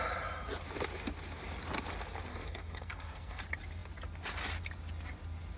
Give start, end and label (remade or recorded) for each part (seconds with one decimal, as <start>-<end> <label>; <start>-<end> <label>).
0.0-2.3 recorded; 2.3-3.4 remade; 3.4-5.6 recorded